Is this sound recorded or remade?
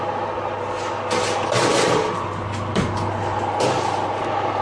recorded